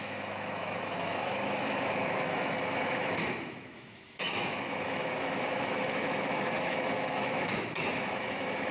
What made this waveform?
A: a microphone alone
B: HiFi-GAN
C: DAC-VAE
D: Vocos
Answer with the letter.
C